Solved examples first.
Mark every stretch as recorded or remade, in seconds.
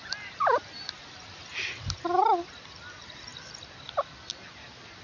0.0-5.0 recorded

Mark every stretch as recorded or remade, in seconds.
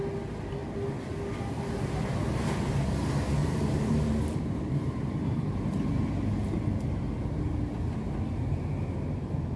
0.0-3.4 recorded; 3.4-6.3 remade; 6.3-9.6 recorded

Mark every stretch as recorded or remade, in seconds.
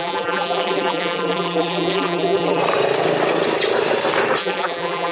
0.0-2.6 remade; 2.6-4.4 recorded; 4.4-5.1 remade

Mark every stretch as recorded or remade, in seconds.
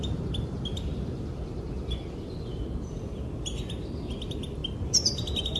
0.0-5.6 recorded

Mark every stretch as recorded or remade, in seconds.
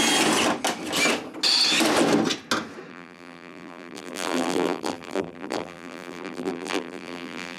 0.0-2.9 recorded; 2.9-7.6 remade